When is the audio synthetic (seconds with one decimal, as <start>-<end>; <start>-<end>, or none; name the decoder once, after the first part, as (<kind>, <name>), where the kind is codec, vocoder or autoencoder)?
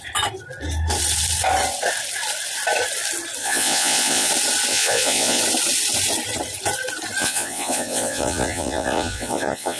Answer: 3.4-4.3 (vocoder, Vocos); 4.7-5.4; 7.2-9.8